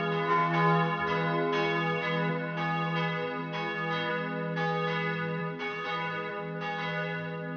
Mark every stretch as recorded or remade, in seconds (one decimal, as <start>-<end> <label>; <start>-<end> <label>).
0.0-5.4 recorded; 5.4-6.3 remade; 6.3-7.6 recorded